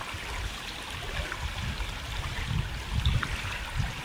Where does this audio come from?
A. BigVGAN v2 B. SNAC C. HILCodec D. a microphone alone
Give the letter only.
D